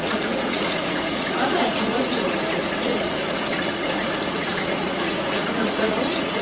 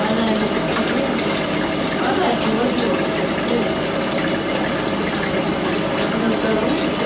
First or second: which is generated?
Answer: first